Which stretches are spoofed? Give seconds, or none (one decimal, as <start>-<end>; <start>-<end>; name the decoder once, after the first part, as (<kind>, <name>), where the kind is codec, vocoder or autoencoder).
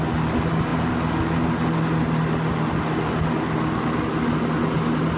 none